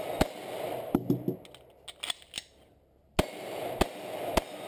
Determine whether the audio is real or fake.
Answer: real